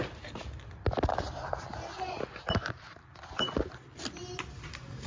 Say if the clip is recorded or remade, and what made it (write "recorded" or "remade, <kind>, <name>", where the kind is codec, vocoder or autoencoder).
recorded